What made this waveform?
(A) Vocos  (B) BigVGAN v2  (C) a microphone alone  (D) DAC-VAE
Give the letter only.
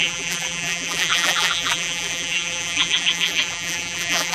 B